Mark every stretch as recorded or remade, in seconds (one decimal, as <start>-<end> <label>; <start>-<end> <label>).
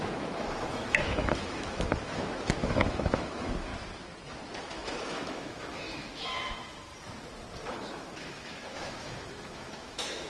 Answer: 0.0-3.7 remade; 3.7-4.6 recorded; 4.6-6.9 remade; 6.9-7.7 recorded; 7.7-10.3 remade